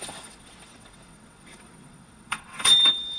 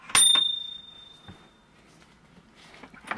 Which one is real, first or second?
second